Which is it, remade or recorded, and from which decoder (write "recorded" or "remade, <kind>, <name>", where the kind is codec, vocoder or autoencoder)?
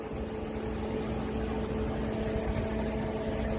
recorded